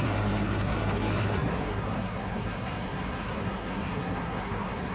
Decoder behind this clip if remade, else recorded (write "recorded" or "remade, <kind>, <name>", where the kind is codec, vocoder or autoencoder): remade, codec, SNAC